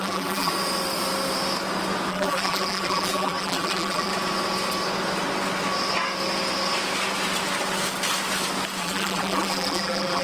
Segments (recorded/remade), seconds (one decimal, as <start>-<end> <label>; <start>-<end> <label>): 0.0-0.5 remade; 0.5-2.1 recorded; 2.1-4.1 remade; 4.1-8.8 recorded; 8.8-10.2 remade